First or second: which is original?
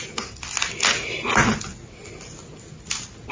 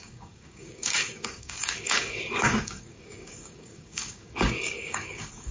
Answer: first